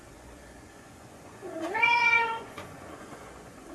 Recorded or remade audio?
remade